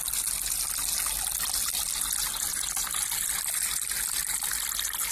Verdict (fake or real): real